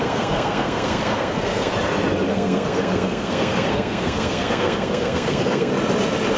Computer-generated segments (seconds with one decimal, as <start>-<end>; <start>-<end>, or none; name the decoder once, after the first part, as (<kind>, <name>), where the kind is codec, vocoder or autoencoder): 0.0-1.7 (codec, SNAC); 2.3-5.7